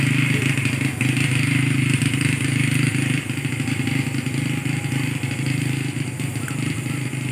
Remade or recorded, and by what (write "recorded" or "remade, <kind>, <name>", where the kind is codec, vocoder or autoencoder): recorded